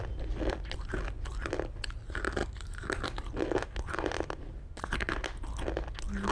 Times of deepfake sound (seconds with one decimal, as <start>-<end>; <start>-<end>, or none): none